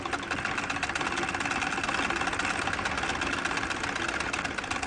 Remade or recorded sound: recorded